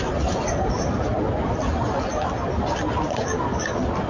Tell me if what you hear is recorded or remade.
recorded